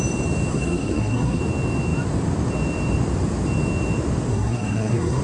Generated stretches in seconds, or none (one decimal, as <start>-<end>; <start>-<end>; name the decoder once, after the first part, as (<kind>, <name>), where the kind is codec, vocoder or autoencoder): 0.5-1.4 (codec, SNAC); 4.3-5.2